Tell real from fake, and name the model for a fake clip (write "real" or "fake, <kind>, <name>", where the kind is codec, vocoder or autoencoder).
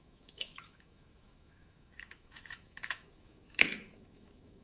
fake, autoencoder, DAC-VAE